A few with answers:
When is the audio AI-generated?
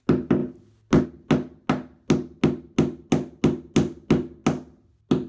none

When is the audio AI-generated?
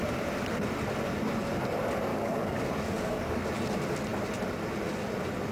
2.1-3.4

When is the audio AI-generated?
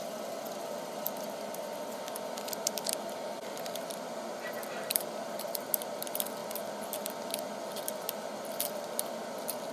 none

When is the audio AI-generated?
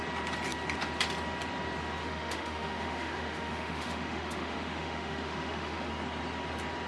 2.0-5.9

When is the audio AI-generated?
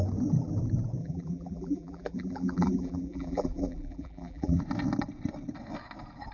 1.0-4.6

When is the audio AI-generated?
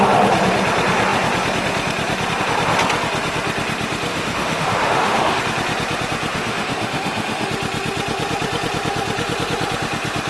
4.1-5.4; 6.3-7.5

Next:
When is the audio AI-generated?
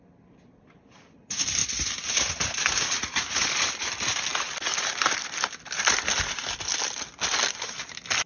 none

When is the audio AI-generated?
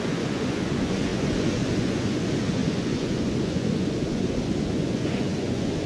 0.0-5.9